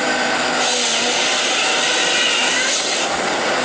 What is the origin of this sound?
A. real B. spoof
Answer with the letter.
A